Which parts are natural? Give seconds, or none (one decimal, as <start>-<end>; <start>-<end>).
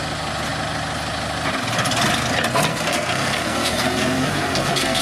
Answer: 0.0-2.7